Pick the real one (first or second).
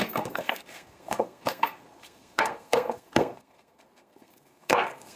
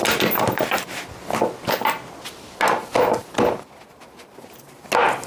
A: second